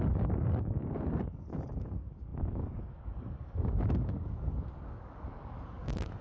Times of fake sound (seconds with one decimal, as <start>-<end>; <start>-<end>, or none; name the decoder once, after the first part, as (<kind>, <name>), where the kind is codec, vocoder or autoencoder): 0.0-6.2 (codec, DAC)

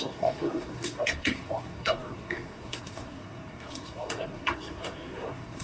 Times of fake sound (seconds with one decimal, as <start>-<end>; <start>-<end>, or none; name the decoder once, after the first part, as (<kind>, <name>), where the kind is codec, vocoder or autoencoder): 0.0-5.6 (codec, SNAC)